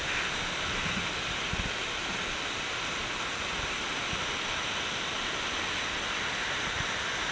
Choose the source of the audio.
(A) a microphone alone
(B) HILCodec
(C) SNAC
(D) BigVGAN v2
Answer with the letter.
A